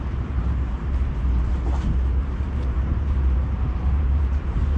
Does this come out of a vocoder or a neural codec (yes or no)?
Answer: yes